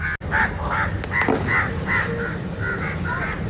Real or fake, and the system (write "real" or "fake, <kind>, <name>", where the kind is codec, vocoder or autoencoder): real